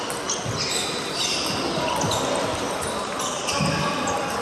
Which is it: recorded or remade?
recorded